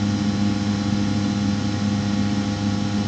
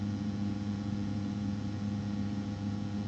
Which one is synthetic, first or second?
second